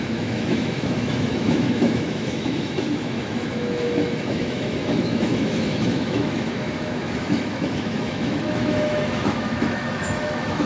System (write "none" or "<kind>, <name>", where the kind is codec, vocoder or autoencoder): autoencoder, DAC-VAE